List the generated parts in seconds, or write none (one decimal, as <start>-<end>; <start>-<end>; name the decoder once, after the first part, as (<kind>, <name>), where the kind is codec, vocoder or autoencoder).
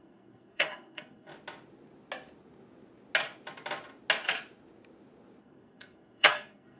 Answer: 0.0-1.3 (codec, SNAC); 5.4-6.8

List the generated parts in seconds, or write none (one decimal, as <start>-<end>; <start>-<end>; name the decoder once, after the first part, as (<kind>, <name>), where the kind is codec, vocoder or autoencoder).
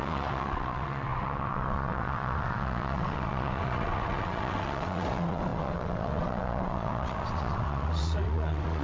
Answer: 0.0-8.8 (vocoder, WaveNeXt)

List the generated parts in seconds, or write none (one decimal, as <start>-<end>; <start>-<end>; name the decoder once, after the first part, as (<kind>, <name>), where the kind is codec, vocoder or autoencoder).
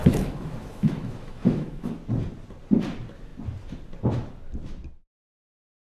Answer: 0.0-2.0 (autoencoder, DAC-VAE)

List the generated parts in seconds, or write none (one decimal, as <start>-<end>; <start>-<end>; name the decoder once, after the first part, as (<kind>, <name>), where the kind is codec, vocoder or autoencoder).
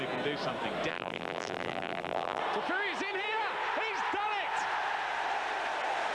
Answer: 0.9-2.4 (vocoder, BigVGAN v2)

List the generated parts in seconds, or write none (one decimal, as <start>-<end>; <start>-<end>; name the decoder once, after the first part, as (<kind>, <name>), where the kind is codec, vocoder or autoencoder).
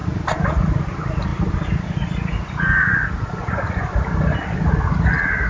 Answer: none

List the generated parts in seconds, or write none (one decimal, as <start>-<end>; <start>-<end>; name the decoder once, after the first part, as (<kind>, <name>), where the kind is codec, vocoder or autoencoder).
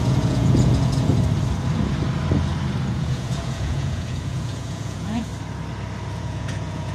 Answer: 0.0-1.1 (vocoder, Vocos); 2.9-5.3; 6.1-6.9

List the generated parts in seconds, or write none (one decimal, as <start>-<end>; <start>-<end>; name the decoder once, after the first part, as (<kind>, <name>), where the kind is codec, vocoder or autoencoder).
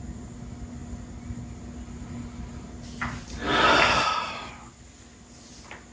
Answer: none